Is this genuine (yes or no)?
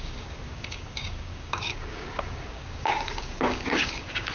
no